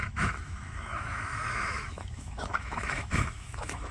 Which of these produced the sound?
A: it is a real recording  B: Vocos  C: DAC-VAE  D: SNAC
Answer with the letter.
C